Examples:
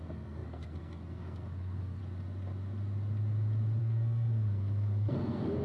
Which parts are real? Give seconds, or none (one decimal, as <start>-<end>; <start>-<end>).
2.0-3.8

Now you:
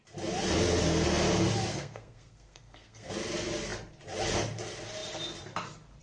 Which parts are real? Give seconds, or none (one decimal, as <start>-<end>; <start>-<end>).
0.0-1.7; 3.1-6.0

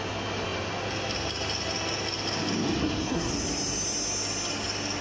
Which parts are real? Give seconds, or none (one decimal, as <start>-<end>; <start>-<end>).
0.0-2.8; 3.3-5.0